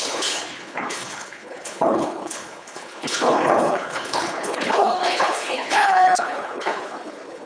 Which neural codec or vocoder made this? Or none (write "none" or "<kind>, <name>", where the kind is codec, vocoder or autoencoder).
codec, HILCodec